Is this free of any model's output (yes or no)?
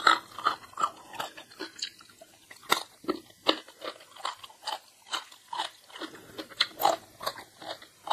yes